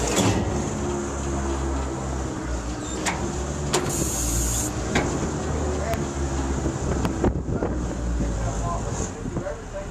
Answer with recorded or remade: recorded